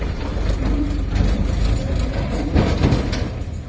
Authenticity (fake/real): real